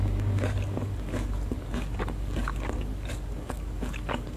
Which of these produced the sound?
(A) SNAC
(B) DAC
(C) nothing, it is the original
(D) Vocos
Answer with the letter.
B